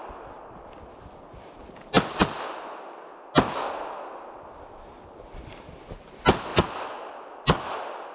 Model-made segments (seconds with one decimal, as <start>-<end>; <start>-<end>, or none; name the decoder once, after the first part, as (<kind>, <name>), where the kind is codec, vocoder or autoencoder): none